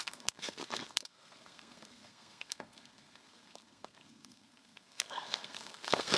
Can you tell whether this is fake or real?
fake